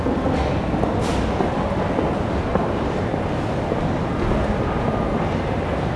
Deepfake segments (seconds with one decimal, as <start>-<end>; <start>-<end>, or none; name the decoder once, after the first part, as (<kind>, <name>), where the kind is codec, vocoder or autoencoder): 2.5-3.8 (vocoder, BigVGAN v2)